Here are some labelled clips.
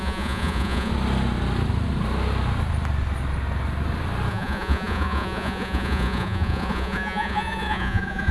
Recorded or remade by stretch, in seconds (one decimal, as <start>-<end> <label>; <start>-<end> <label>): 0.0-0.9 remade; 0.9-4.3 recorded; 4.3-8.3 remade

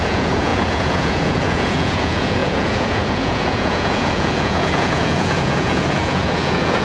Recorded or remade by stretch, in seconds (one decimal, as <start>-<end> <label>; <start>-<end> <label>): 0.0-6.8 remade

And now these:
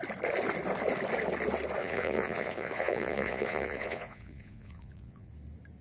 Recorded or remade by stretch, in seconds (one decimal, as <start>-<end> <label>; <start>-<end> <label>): 0.0-1.8 recorded; 1.8-5.3 remade; 5.3-5.8 recorded